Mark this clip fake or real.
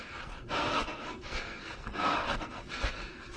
fake